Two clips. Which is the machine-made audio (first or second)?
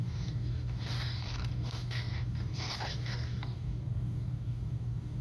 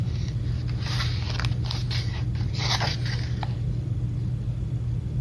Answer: first